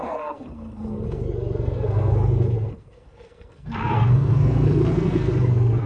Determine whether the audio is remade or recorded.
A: remade